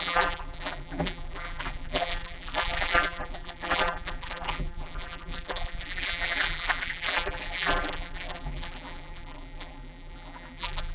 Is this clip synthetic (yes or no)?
yes